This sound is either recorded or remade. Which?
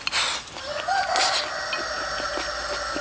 recorded